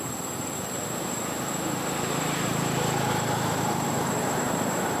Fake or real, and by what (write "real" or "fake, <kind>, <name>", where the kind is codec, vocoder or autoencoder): fake, vocoder, BigVGAN v2